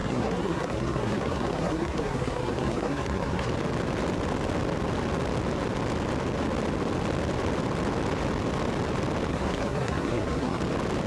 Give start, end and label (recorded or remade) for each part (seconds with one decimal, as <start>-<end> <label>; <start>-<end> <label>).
0.0-3.5 remade; 3.5-9.3 recorded; 9.3-10.6 remade; 10.6-11.1 recorded